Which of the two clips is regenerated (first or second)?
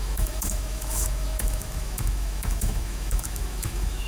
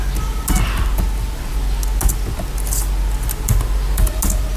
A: first